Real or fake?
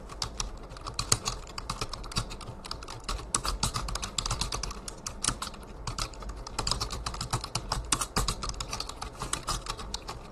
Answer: real